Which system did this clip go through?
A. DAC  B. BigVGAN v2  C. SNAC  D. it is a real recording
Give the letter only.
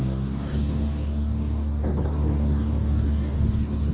A